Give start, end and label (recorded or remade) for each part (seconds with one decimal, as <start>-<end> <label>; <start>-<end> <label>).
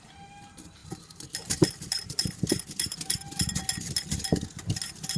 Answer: 0.0-5.2 recorded